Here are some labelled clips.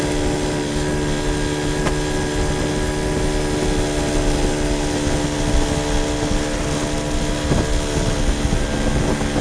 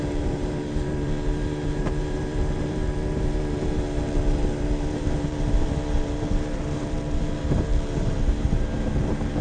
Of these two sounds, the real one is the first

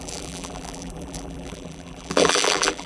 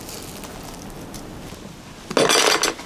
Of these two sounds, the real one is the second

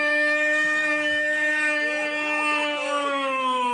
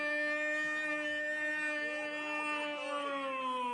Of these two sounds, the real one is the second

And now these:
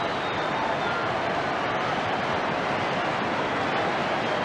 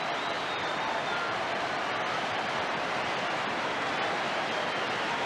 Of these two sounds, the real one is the first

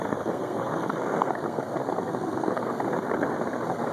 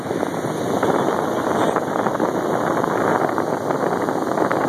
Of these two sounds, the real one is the second